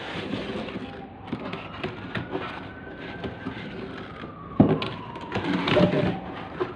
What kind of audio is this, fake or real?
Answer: real